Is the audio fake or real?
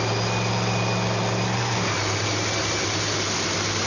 real